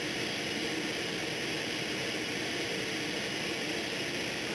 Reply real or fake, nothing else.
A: real